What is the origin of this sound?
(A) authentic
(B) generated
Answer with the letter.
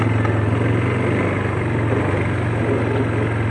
A